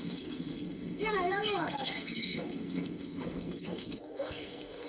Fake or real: fake